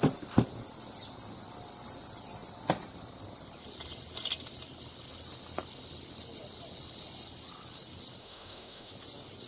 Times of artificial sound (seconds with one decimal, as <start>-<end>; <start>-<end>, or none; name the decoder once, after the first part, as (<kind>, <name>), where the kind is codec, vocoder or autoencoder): 8.2-8.9 (autoencoder, DAC-VAE)